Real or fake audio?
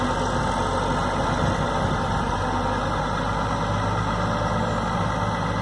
real